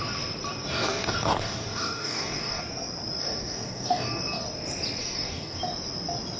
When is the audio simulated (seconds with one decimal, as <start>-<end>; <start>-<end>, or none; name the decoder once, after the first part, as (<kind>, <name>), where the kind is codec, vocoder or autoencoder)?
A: 0.7-2.6 (codec, DAC); 3.2-4.2; 5.0-5.6